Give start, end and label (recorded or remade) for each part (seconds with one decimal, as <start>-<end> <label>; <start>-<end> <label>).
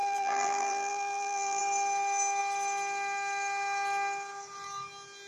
0.0-1.6 remade; 1.6-5.3 recorded